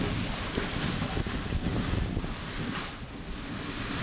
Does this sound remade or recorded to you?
recorded